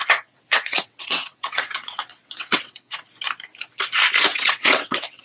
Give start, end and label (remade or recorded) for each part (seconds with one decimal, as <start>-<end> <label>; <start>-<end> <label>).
0.0-3.1 remade; 3.1-4.3 recorded; 4.3-5.2 remade